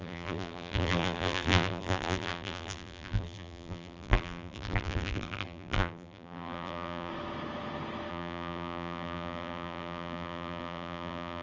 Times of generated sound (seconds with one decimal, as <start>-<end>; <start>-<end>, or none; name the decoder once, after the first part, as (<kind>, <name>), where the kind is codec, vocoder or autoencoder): 0.0-7.1 (vocoder, BigVGAN v2); 8.1-11.4